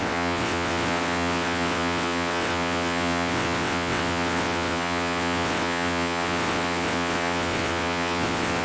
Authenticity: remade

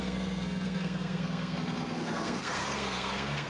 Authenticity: remade